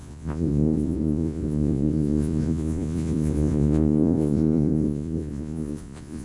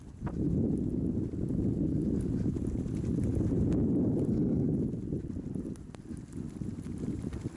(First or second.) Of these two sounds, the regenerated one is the first